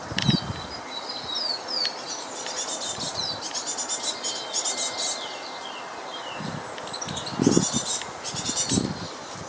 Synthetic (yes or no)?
no